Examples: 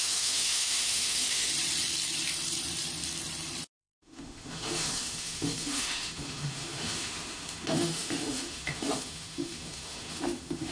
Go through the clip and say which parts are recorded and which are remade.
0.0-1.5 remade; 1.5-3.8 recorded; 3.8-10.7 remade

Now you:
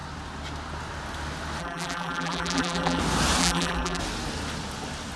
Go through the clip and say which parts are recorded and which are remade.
0.0-1.6 recorded; 1.6-3.0 remade; 3.0-3.4 recorded; 3.4-4.0 remade; 4.0-5.2 recorded